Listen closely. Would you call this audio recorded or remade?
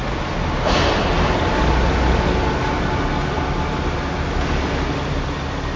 recorded